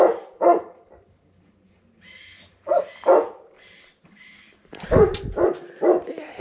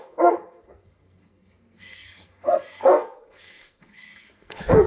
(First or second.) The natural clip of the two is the first